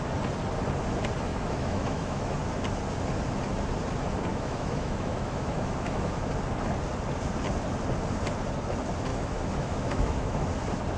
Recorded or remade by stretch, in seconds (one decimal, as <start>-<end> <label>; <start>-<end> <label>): 0.0-1.3 recorded; 1.3-2.4 remade; 2.4-4.3 recorded; 4.3-6.3 remade; 6.3-9.1 recorded; 9.1-10.5 remade; 10.5-11.0 recorded